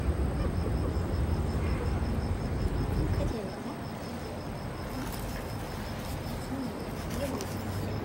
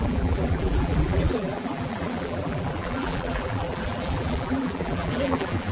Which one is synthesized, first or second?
second